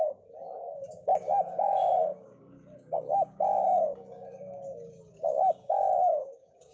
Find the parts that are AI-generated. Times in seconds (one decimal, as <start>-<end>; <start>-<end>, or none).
0.0-6.7